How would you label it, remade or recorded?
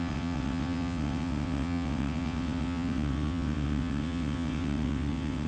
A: remade